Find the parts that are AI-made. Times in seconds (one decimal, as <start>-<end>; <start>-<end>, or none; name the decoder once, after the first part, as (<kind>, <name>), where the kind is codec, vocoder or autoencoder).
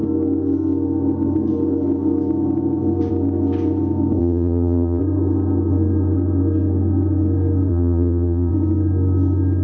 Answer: 4.2-5.0 (vocoder, Vocos); 7.7-8.5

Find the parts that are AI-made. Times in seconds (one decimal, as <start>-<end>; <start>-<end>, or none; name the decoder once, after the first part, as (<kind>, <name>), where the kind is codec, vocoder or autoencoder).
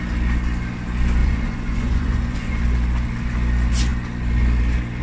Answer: 1.2-2.6 (vocoder, Vocos)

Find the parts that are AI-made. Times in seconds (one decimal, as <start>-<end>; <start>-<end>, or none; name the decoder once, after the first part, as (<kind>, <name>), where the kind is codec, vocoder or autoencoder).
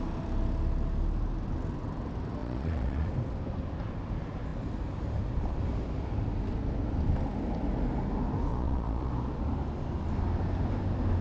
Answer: 2.4-3.1 (vocoder, Vocos); 8.5-9.1